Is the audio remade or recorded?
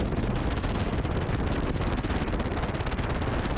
recorded